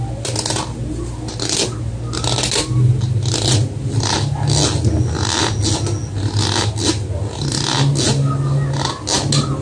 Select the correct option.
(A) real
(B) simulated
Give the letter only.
A